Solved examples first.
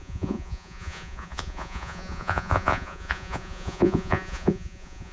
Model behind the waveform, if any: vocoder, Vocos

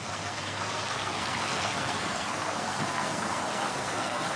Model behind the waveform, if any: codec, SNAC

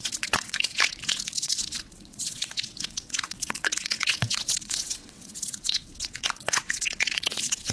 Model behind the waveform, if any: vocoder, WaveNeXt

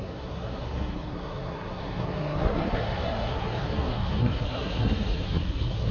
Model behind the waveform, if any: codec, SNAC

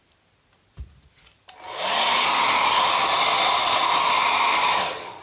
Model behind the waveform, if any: none